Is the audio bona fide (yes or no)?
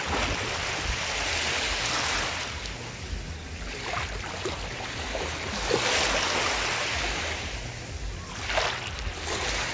yes